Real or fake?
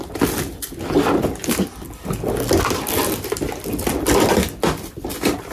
real